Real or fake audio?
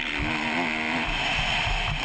real